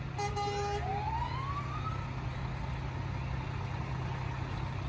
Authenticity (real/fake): real